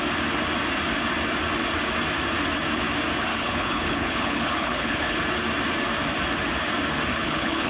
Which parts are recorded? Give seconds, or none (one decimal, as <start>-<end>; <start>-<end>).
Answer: 0.0-3.3; 5.2-7.1